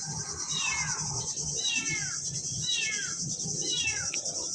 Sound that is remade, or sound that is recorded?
recorded